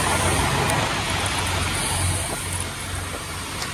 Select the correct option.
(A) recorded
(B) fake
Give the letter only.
A